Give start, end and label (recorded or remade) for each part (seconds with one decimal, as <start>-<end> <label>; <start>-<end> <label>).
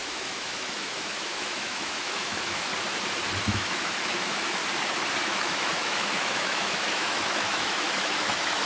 0.0-2.7 remade; 2.7-3.4 recorded; 3.4-4.6 remade; 4.6-5.2 recorded; 5.2-8.7 remade